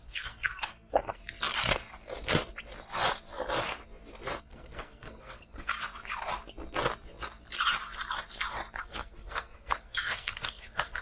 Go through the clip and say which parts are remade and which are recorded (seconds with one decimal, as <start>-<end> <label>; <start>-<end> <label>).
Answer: 0.0-1.2 remade; 1.2-4.4 recorded; 4.4-5.7 remade; 5.7-8.8 recorded; 8.8-11.0 remade